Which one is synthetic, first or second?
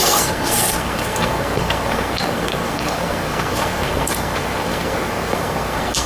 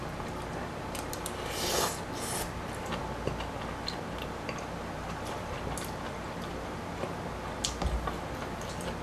first